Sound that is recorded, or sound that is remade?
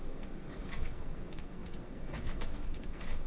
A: remade